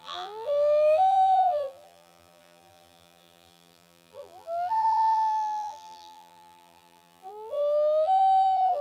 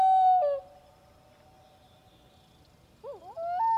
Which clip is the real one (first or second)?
second